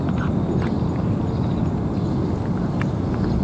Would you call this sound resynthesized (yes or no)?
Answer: no